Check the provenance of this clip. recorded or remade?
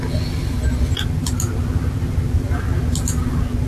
recorded